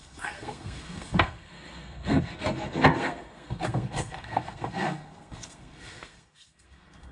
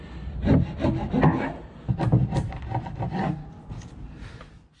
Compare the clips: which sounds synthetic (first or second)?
first